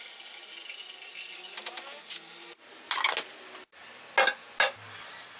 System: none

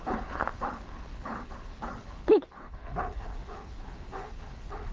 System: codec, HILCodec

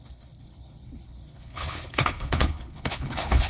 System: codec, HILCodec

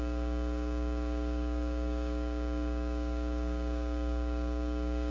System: codec, DAC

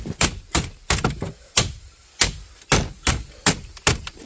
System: none